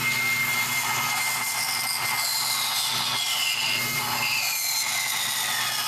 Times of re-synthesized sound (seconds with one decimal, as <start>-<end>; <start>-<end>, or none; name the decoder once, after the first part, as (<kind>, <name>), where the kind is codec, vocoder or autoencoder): none